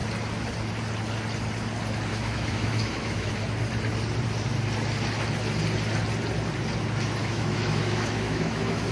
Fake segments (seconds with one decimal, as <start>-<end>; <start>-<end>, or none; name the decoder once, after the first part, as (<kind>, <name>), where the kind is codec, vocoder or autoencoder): 2.1-3.3 (autoencoder, DAC-VAE); 7.2-8.9